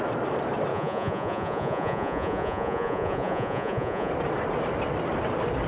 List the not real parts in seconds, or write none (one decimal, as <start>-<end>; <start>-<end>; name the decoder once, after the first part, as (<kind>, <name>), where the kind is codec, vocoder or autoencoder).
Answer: 0.7-4.1 (vocoder, Vocos)